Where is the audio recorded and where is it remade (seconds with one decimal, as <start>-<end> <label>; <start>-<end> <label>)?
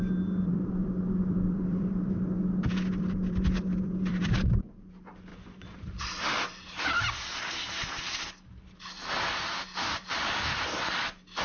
0.0-0.5 recorded; 0.5-2.1 remade; 2.1-4.1 recorded; 4.1-4.7 remade; 4.7-5.3 recorded; 5.3-6.8 remade; 6.8-11.4 recorded